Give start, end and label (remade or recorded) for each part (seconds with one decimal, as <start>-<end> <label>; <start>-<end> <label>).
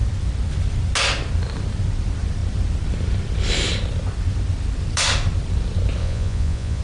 0.0-6.0 recorded; 6.0-6.8 remade